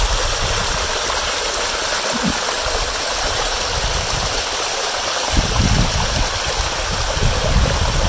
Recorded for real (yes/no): yes